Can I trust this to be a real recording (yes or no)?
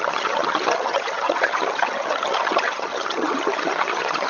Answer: no